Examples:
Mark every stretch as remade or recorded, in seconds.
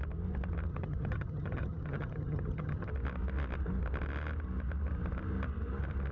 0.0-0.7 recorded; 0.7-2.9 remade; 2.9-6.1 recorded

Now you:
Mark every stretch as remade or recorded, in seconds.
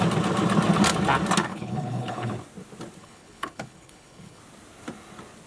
0.0-1.5 recorded; 1.5-2.3 remade; 2.3-3.0 recorded; 3.0-4.4 remade; 4.4-5.5 recorded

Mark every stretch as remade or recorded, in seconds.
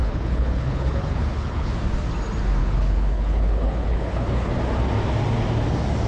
0.0-1.7 remade; 1.7-2.6 recorded; 2.6-4.5 remade; 4.5-6.1 recorded